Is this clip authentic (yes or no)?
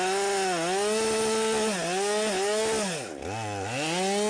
yes